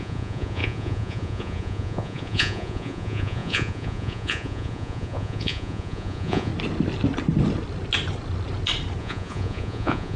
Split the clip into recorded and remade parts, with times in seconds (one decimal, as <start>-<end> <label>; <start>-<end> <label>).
0.0-6.5 remade; 6.5-9.0 recorded; 9.0-10.2 remade